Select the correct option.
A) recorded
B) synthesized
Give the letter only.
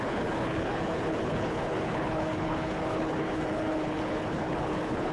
B